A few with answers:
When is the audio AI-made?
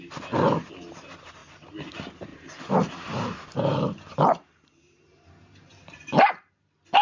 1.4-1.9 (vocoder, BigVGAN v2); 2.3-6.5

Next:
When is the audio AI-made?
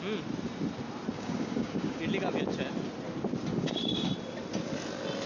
1.1-2.0 (codec, DAC); 3.5-4.1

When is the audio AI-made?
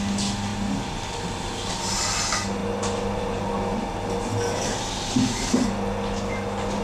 none